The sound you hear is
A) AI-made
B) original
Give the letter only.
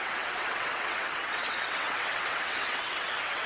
A